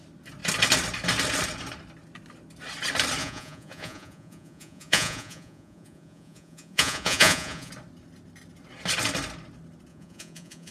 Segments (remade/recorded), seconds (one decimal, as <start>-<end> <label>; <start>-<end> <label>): 0.0-3.2 recorded; 3.2-7.7 remade; 7.7-9.9 recorded; 9.9-10.7 remade